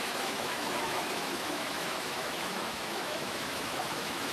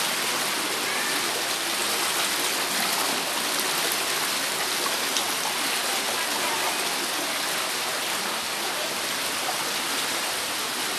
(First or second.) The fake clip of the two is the first